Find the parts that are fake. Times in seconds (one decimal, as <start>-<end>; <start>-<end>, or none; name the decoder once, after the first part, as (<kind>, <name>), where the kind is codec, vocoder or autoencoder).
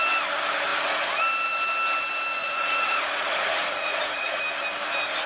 2.4-4.4 (vocoder, Vocos)